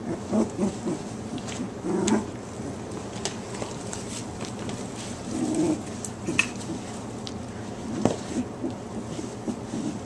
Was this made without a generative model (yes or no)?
yes